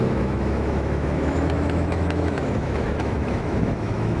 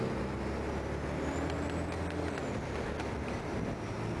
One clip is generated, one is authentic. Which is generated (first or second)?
first